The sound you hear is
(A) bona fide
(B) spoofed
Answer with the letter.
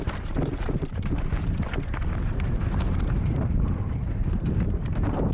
B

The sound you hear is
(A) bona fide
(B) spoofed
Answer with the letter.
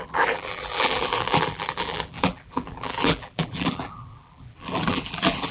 B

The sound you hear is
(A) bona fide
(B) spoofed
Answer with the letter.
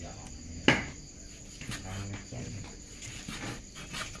A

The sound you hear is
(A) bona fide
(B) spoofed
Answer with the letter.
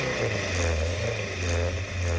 A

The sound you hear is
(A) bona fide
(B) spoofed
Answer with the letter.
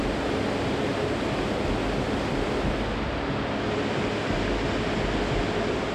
A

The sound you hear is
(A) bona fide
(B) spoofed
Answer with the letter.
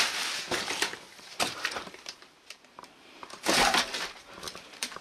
B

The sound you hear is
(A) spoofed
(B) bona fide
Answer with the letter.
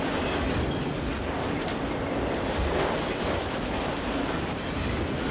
B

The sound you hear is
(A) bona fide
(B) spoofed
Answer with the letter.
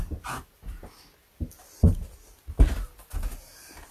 A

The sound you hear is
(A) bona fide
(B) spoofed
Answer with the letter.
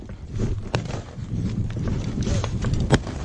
B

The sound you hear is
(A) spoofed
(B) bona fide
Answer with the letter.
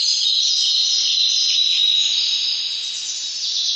B